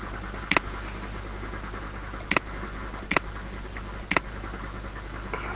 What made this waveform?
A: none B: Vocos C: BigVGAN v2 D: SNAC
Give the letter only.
A